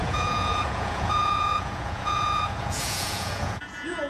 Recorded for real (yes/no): no